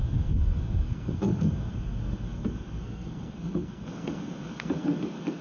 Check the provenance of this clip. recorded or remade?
remade